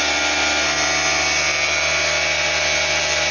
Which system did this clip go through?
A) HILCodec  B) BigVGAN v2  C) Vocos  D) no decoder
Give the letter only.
D